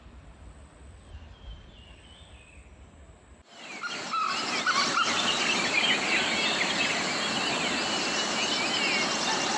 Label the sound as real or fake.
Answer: real